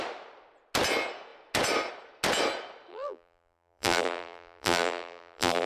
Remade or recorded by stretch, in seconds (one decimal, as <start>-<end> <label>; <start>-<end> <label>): 0.0-2.9 recorded; 2.9-5.7 remade